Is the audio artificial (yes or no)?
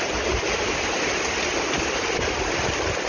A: no